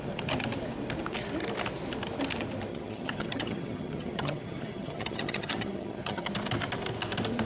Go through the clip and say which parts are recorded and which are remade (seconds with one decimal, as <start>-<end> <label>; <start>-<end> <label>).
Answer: 0.0-2.7 recorded; 2.7-6.3 remade; 6.3-7.4 recorded

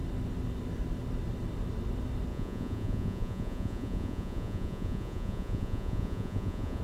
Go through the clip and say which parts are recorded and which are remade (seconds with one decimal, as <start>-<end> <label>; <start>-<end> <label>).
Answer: 0.0-2.3 recorded; 2.3-6.8 remade